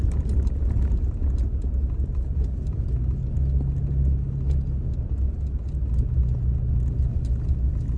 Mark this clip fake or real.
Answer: real